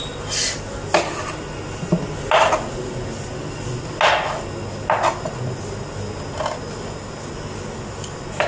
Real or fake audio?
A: real